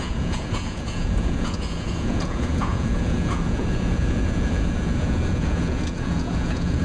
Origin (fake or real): fake